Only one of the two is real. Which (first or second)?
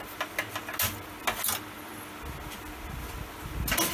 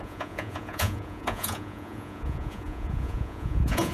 first